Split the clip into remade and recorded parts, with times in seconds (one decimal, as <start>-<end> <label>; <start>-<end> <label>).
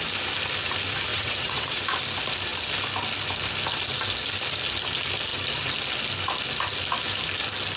0.0-1.1 recorded; 1.1-1.8 remade; 1.8-7.8 recorded